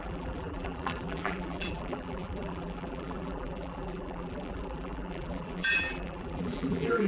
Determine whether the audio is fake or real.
fake